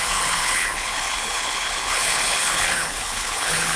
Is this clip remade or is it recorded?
remade